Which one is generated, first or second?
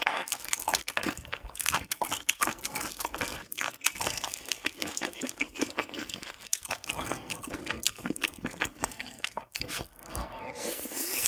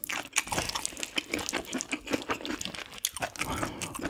first